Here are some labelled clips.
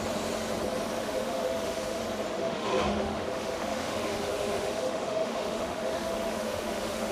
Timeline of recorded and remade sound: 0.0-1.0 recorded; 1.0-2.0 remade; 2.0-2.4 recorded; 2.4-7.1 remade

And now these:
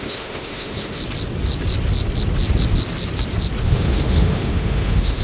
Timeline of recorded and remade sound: 0.0-1.0 remade; 1.0-3.6 recorded; 3.6-5.2 remade

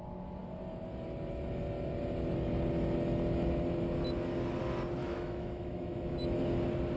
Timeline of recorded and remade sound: 0.0-5.0 recorded; 5.0-6.4 remade; 6.4-7.0 recorded

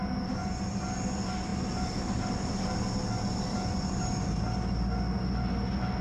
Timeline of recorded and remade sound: 0.0-6.0 recorded